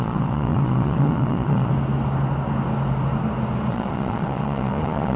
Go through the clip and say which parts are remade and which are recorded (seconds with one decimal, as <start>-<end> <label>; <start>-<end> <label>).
0.0-1.7 remade; 1.7-3.7 recorded; 3.7-5.2 remade